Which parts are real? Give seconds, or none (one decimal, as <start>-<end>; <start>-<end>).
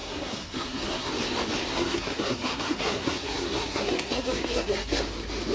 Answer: 1.1-1.7; 5.0-5.5